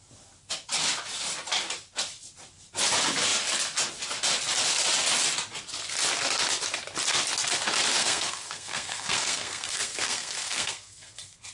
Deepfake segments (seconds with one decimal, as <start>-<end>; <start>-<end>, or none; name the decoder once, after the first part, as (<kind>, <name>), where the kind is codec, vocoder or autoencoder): 8.0-11.5 (codec, SNAC)